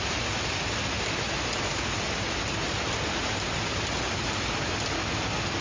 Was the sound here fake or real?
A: real